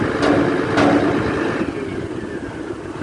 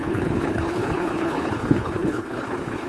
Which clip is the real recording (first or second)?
first